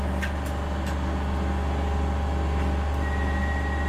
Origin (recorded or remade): recorded